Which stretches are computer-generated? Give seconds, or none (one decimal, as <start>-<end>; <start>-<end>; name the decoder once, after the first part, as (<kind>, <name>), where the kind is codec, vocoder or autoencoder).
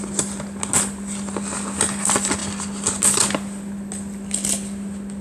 none